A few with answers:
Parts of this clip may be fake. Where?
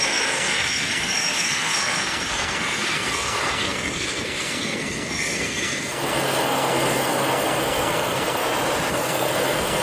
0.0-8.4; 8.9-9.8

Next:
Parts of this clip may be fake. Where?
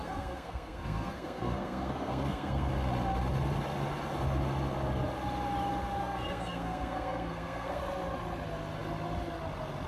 0.0-2.7; 6.0-7.8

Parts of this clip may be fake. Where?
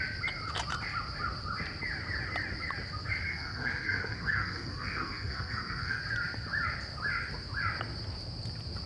3.3-6.0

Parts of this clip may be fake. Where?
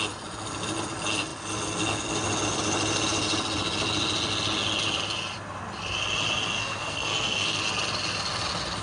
6.6-7.6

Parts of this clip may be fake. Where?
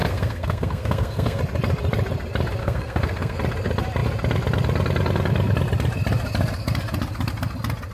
0.0-1.4; 2.6-3.4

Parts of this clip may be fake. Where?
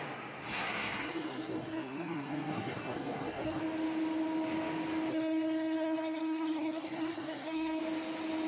0.5-3.6; 5.1-7.8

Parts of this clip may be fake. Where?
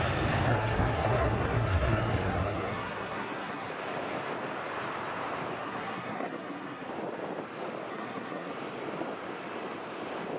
0.5-3.7; 5.6-6.9; 7.9-8.5